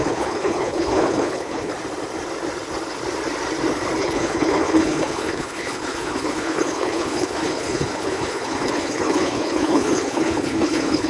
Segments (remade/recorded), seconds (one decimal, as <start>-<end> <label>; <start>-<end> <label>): 0.0-1.7 remade; 1.7-4.0 recorded; 4.0-11.1 remade